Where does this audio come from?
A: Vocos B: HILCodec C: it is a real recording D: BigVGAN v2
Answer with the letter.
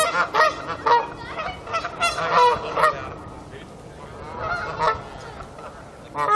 C